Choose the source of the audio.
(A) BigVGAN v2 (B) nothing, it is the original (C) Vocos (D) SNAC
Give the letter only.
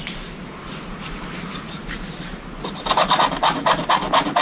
B